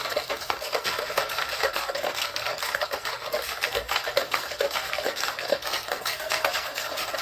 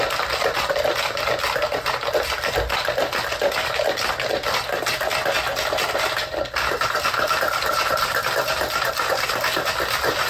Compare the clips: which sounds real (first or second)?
second